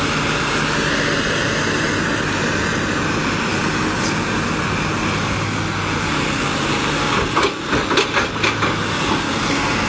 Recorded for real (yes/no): yes